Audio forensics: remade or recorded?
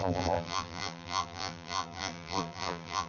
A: remade